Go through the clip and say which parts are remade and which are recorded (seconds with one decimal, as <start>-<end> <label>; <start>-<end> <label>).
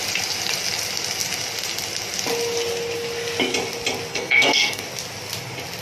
0.0-4.1 recorded; 4.1-4.8 remade; 4.8-5.8 recorded